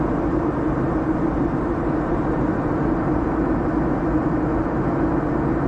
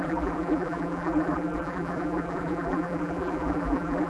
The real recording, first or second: first